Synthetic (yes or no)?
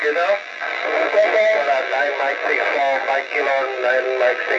yes